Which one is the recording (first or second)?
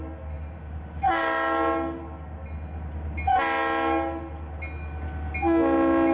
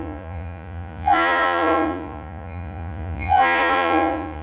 first